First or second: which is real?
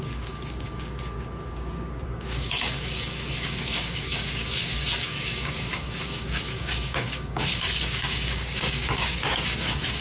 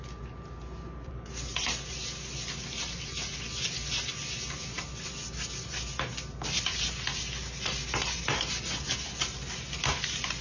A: second